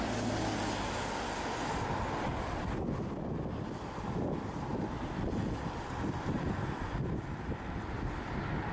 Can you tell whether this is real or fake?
real